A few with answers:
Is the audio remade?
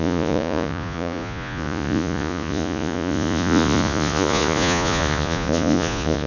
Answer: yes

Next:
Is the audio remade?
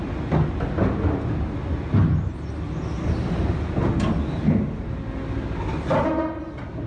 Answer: no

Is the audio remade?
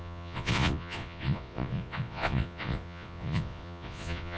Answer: yes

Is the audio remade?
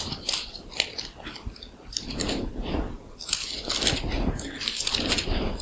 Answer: no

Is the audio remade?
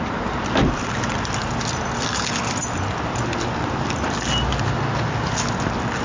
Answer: no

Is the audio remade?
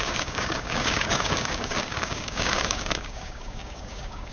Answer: yes